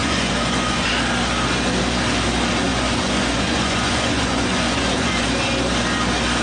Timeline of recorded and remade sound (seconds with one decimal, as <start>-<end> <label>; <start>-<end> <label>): 0.0-0.9 remade; 0.9-2.7 recorded; 2.7-5.3 remade; 5.3-6.4 recorded